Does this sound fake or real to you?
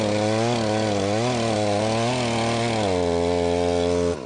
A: real